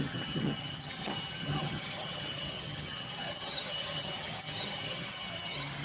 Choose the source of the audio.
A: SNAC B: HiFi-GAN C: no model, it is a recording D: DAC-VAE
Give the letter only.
B